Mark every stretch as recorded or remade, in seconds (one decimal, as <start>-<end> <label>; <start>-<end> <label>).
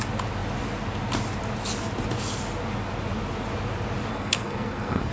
0.0-4.1 recorded; 4.1-5.1 remade